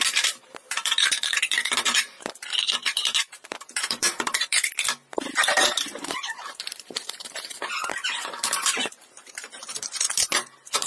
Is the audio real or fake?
fake